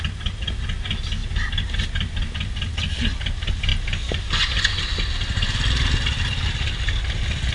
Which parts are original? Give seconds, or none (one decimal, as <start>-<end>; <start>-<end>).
0.0-7.5